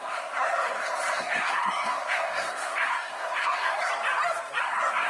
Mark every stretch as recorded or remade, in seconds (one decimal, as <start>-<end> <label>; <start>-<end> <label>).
0.0-3.9 remade; 3.9-4.6 recorded; 4.6-5.1 remade